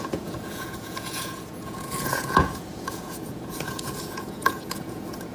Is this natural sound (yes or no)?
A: no